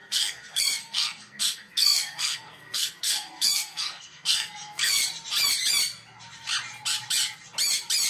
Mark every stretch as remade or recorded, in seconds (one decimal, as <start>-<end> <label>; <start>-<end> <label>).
0.0-5.0 remade; 5.0-8.1 recorded